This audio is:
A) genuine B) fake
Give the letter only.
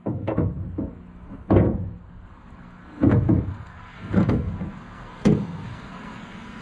B